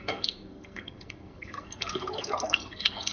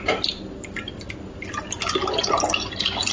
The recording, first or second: second